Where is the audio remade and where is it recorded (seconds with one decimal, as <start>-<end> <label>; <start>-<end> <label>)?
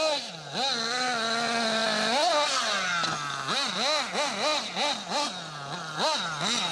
0.0-6.7 recorded